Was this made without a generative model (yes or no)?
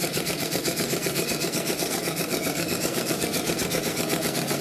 no